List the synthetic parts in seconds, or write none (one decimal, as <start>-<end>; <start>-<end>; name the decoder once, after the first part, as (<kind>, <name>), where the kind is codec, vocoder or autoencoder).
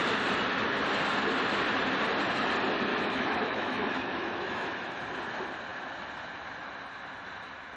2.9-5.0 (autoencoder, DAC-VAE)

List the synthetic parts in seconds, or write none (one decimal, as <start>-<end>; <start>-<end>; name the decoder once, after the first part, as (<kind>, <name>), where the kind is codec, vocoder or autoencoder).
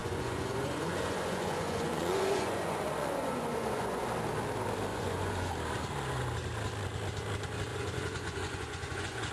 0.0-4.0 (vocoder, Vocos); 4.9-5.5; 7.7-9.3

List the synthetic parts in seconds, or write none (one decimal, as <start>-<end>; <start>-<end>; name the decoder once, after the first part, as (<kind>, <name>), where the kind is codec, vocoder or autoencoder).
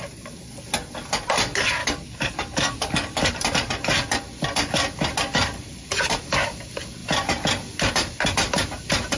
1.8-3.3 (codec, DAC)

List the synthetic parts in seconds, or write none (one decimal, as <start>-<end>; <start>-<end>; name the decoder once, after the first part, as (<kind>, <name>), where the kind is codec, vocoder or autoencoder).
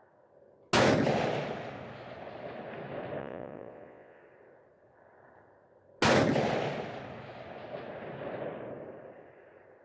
3.2-4.2 (vocoder, Vocos)